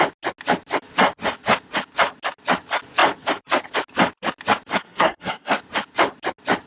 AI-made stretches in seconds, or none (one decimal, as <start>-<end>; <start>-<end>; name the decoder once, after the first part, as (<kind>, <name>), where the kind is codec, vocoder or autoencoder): 4.8-5.6 (codec, SNAC)